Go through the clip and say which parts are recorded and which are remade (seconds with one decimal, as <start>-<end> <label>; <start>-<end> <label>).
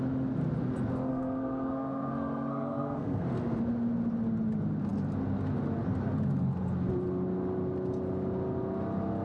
0.0-1.1 recorded; 1.1-3.6 remade; 3.6-9.2 recorded